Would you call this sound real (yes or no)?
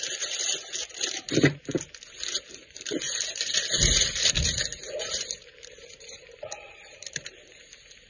no